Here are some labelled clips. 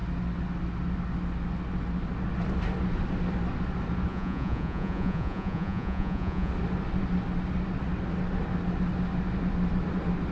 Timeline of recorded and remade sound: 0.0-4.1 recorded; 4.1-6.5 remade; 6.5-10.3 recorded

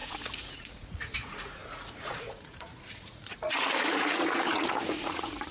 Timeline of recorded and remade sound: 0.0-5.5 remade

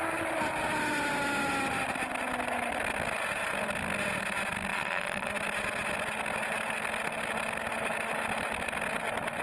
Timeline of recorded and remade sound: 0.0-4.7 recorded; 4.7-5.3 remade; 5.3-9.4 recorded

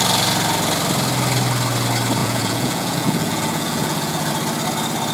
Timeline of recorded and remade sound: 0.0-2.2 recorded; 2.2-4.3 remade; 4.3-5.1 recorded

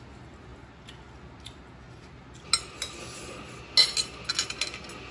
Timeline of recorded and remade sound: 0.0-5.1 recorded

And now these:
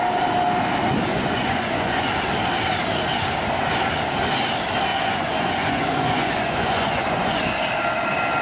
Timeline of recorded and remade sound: 0.0-1.1 recorded; 1.1-2.1 remade; 2.1-4.9 recorded; 4.9-7.4 remade; 7.4-8.4 recorded

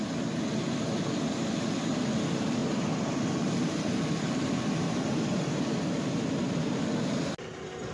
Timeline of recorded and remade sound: 0.0-7.9 recorded